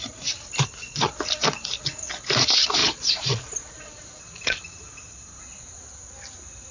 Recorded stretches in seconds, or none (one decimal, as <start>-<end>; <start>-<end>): 0.0-2.8; 3.9-6.7